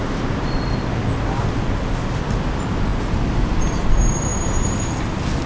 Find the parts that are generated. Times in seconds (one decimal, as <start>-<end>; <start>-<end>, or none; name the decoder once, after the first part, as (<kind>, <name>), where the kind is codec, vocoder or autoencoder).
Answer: 0.0-0.6 (vocoder, BigVGAN v2); 4.3-4.9

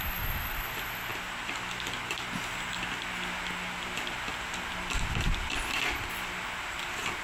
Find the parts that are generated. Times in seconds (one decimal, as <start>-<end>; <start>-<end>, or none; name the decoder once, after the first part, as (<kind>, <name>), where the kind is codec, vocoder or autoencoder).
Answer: none

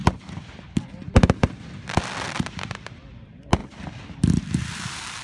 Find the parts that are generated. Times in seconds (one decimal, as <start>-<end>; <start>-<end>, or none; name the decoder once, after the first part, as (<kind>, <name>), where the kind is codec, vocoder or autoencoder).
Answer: 0.0-5.2 (vocoder, BigVGAN v2)

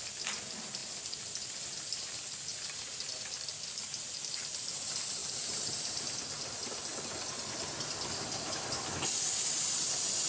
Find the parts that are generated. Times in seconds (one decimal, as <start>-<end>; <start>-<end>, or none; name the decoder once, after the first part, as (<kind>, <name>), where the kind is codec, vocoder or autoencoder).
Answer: 5.2-6.0 (vocoder, BigVGAN v2)

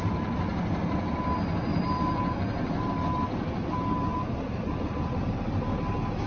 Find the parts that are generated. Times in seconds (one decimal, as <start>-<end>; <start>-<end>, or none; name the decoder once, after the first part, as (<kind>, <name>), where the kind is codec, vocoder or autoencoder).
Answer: 0.5-1.1 (vocoder, BigVGAN v2); 1.7-2.9; 4.1-5.4